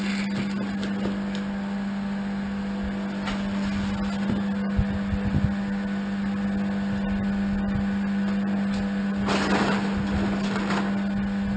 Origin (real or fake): real